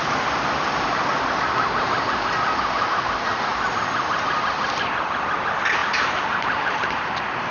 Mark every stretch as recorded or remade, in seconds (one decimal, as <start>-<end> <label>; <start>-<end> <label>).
0.0-5.8 recorded; 5.8-7.5 remade